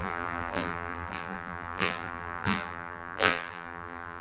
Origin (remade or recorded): remade